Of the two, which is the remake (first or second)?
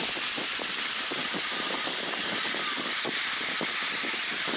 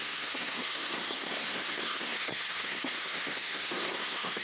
second